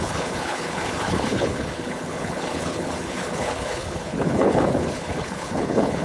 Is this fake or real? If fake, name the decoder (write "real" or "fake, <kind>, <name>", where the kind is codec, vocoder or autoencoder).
fake, codec, HILCodec